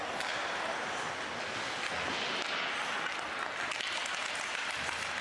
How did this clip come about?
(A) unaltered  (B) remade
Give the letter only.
A